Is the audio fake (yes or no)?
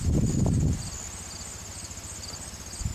no